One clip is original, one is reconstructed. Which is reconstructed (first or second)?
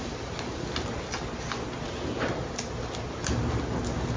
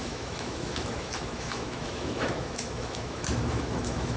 second